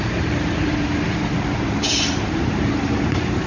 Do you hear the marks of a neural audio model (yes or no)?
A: yes